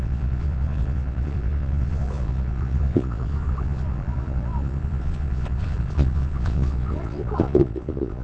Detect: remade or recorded remade